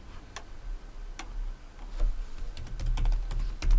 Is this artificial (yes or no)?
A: no